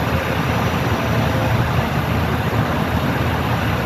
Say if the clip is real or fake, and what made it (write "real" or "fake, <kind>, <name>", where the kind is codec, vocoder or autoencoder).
real